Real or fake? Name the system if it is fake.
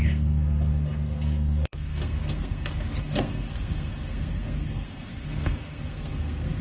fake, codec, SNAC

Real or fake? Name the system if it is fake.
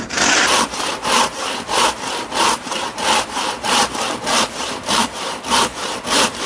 fake, vocoder, BigVGAN v2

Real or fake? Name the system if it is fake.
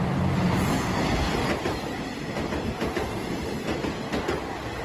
real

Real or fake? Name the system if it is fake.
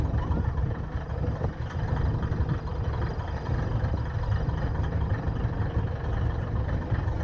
fake, vocoder, BigVGAN v2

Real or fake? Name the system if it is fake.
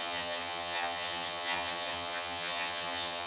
fake, vocoder, HiFi-GAN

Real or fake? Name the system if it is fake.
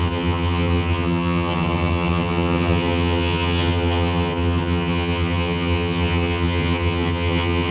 fake, vocoder, HiFi-GAN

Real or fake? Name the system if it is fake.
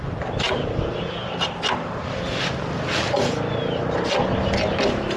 real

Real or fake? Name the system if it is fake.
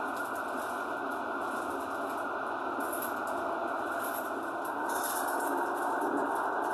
real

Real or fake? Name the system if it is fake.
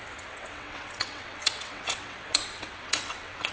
fake, vocoder, WaveNeXt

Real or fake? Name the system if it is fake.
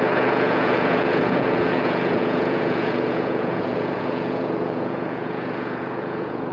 fake, vocoder, Vocos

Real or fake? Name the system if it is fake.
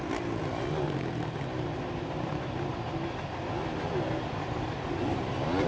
real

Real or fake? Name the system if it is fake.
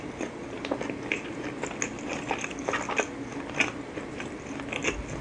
real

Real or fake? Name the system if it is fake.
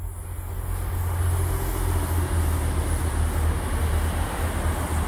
real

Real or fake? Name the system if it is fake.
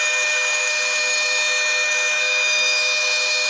fake, autoencoder, DAC-VAE